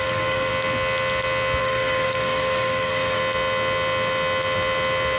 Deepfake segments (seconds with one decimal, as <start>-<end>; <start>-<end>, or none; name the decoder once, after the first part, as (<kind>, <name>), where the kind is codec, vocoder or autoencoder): 0.0-0.5 (codec, DAC); 1.6-3.2